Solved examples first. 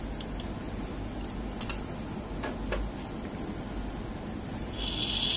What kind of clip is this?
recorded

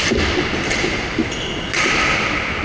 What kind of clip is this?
recorded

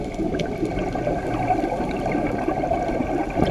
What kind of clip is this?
recorded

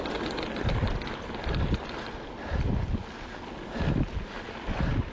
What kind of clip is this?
recorded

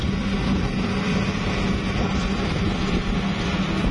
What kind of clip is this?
recorded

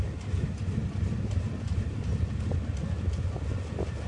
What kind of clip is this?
recorded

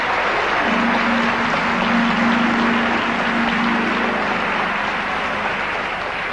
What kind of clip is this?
recorded